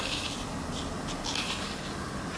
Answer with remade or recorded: recorded